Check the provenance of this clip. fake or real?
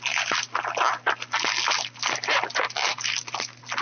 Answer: real